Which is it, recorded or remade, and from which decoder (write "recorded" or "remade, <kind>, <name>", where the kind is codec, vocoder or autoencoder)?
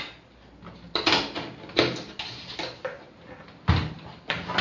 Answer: recorded